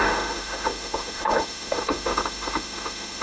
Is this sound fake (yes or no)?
yes